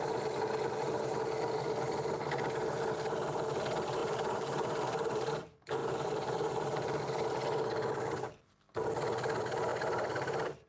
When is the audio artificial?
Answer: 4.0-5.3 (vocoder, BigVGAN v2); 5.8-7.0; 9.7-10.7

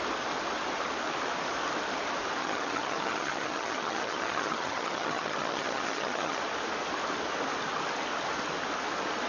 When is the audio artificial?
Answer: 2.4-6.4 (vocoder, HiFi-GAN)

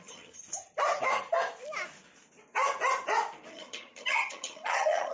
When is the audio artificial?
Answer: 0.0-0.4 (vocoder, HiFi-GAN); 3.5-5.1

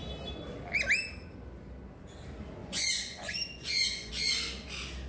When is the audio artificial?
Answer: 2.6-4.1 (vocoder, Vocos)

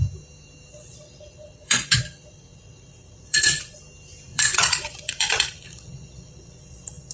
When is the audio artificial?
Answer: 0.7-3.8 (vocoder, Vocos); 4.3-7.1

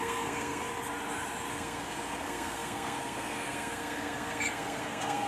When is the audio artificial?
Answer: 0.0-0.7 (codec, SNAC); 1.5-5.3

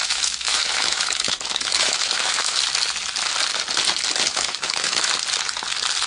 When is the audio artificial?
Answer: 0.0-2.6 (autoencoder, DAC-VAE); 4.3-5.1